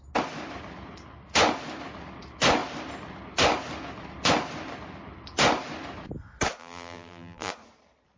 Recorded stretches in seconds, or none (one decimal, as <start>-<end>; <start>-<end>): 0.0-6.6; 7.5-8.2